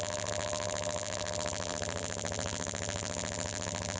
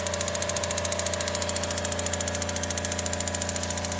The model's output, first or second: first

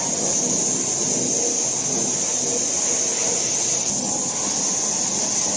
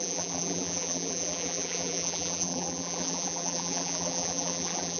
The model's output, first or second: second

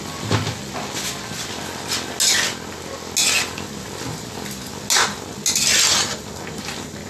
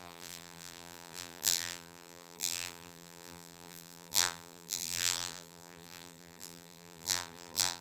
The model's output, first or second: second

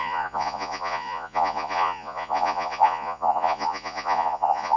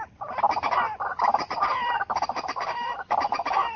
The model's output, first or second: first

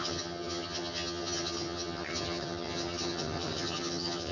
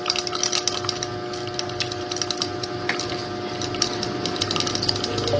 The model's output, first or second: first